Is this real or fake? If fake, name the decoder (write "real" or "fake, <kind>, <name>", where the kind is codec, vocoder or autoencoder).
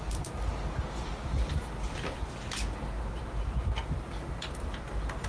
real